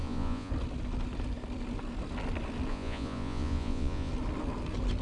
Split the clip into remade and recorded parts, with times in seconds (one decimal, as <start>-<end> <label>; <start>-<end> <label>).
0.0-0.5 remade; 0.5-2.7 recorded; 2.7-4.1 remade; 4.1-5.0 recorded